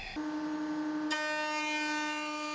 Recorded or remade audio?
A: recorded